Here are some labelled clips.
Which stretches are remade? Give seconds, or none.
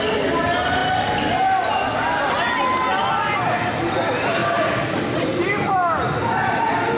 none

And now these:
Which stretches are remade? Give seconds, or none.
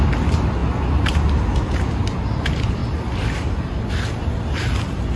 none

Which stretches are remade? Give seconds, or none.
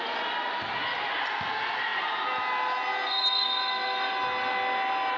none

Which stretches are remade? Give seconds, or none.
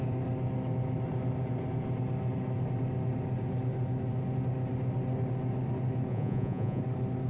6.1-6.8 (vocoder, Vocos)